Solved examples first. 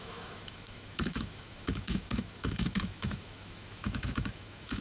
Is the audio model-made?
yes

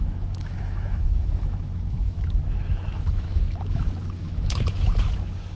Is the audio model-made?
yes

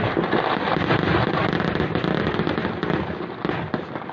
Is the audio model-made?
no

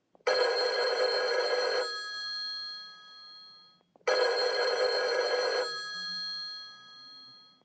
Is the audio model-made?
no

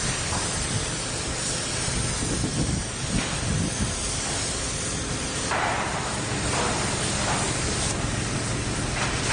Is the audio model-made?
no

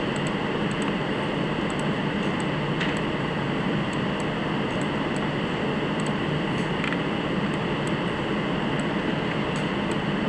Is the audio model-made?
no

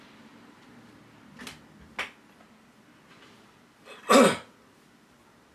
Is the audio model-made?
no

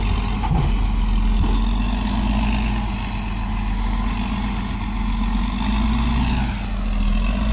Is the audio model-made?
no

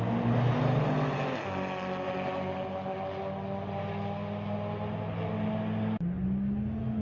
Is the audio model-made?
no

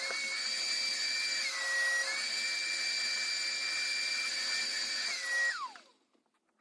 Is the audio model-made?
no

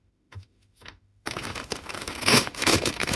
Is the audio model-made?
yes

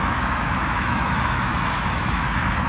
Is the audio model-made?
yes